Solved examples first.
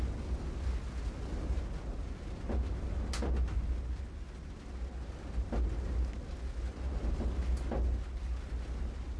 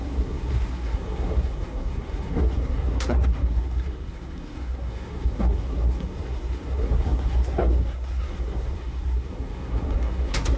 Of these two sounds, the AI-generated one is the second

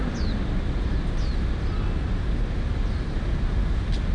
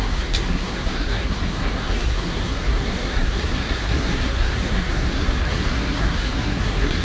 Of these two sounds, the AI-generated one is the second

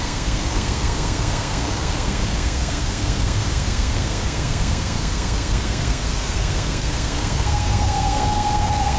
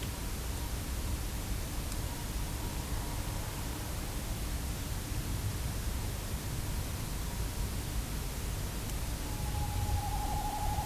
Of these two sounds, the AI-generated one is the first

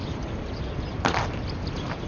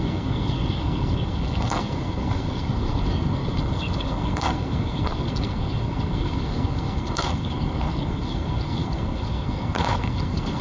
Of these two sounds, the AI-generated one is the second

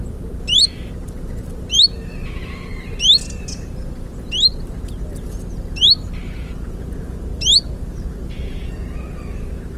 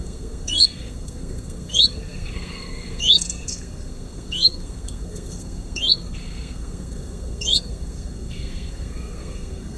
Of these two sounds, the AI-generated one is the second